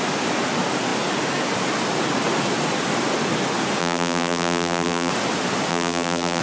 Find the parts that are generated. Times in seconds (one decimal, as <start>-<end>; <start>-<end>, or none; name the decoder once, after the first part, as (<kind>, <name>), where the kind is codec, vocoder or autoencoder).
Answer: 3.8-5.1 (vocoder, BigVGAN v2); 5.7-6.4